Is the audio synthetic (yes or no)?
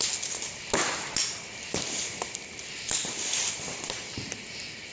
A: no